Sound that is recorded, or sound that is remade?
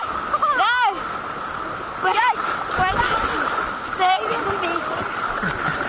recorded